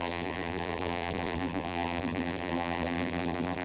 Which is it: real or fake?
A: fake